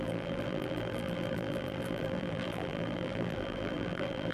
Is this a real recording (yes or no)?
no